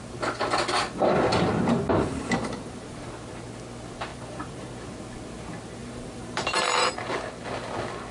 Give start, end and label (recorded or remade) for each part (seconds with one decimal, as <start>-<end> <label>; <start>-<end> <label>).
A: 0.0-1.9 recorded; 1.9-3.1 remade; 3.1-4.1 recorded; 4.1-4.7 remade; 4.7-5.8 recorded; 5.8-6.9 remade; 6.9-8.1 recorded